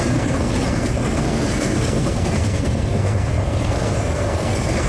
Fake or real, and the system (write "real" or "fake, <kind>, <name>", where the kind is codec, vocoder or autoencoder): fake, codec, SNAC